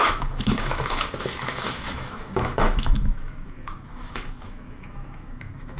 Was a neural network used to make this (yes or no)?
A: yes